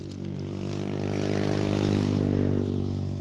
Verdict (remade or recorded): recorded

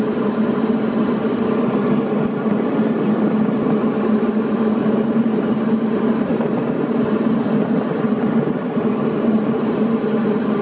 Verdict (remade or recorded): recorded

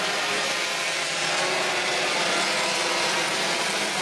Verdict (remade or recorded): remade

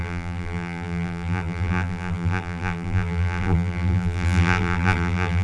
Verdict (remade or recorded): remade